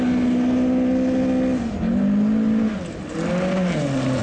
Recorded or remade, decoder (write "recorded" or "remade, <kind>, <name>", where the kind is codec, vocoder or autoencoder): recorded